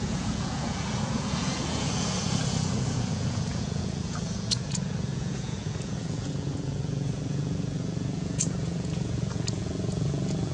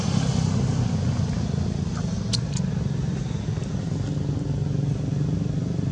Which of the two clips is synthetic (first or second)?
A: first